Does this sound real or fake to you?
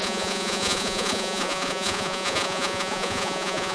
fake